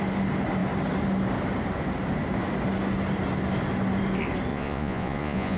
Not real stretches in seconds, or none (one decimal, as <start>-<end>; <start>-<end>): 4.5-5.6